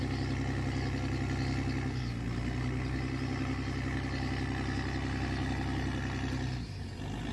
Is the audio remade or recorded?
recorded